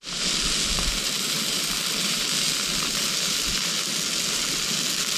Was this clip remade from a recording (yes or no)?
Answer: no